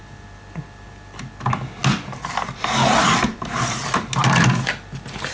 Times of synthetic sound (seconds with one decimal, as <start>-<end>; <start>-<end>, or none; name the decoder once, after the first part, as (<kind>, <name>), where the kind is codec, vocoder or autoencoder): none